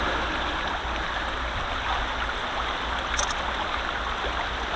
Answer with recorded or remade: recorded